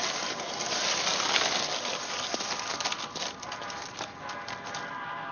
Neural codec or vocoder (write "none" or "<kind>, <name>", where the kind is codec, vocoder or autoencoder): none